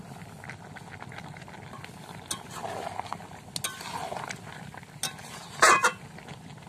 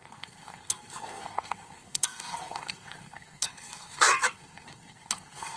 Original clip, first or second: first